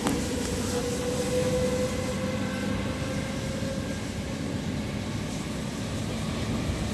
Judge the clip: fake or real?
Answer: real